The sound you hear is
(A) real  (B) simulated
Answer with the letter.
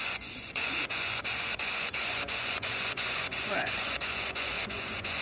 B